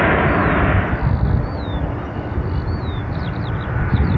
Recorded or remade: recorded